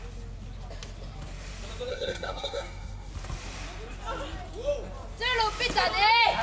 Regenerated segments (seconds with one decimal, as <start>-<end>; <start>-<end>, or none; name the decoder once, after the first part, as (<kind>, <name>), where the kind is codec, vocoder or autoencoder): 1.9-3.1 (codec, SNAC)